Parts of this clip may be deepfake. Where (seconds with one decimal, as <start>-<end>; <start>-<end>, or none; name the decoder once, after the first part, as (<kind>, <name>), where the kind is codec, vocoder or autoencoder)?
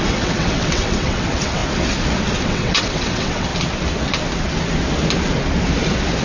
0.0-1.6 (vocoder, WaveNeXt); 2.4-3.5